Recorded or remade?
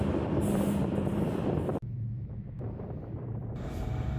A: remade